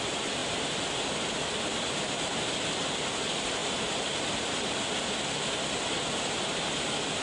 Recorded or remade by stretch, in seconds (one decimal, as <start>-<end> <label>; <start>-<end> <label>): 0.0-7.2 recorded